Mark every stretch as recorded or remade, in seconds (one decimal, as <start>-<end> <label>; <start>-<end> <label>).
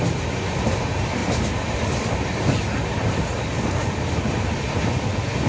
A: 0.0-5.5 recorded